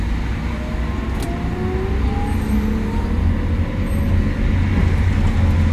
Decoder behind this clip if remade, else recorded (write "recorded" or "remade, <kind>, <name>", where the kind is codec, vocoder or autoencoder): recorded